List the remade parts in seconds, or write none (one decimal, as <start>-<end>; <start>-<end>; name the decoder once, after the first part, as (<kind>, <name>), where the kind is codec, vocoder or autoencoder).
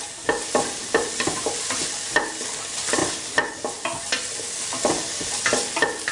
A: none